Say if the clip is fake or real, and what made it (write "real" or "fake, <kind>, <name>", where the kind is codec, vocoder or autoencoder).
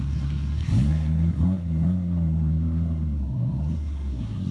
fake, codec, SNAC